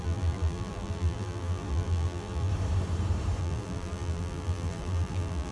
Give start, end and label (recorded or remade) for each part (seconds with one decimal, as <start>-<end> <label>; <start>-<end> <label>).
0.0-2.5 remade; 2.5-3.4 recorded; 3.4-5.5 remade